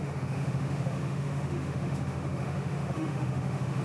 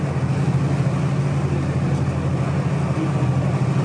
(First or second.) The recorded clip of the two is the second